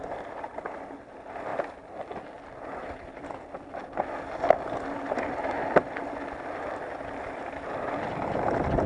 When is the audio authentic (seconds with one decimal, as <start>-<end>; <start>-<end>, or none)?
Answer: 1.5-5.0